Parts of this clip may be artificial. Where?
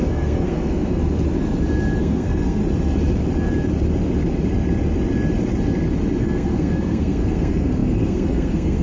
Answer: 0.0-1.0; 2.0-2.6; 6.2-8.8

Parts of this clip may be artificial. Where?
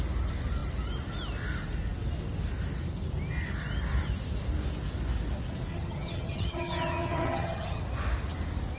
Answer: 5.7-7.8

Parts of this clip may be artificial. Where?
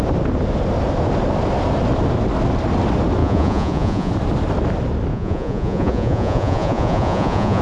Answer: 3.2-4.1; 5.1-7.6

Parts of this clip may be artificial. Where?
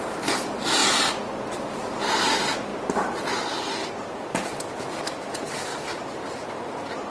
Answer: 1.8-2.3; 5.7-6.3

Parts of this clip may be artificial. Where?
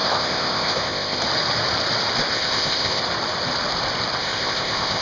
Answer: 0.0-1.2; 2.3-3.0; 4.2-5.0